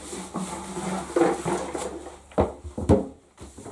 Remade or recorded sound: recorded